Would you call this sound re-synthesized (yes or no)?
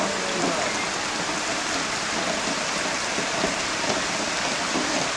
no